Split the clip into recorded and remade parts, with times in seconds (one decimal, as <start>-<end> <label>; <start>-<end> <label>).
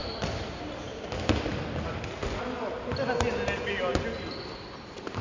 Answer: 0.0-5.2 recorded